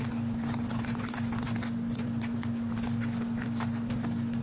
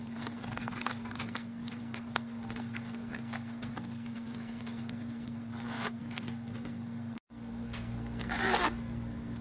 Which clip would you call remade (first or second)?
second